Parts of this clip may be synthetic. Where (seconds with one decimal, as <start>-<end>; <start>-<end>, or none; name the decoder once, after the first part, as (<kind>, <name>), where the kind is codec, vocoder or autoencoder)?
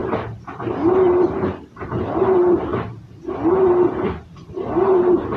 0.0-2.7 (vocoder, BigVGAN v2); 4.2-5.4